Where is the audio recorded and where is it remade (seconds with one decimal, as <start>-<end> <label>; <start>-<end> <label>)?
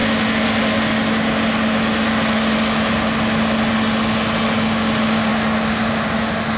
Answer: 0.0-6.6 recorded